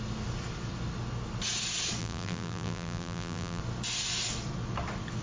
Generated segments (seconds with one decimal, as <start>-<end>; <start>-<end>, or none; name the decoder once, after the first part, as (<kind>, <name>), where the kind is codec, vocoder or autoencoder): 2.0-3.6 (vocoder, BigVGAN v2)